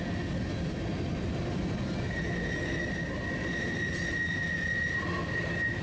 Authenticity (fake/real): real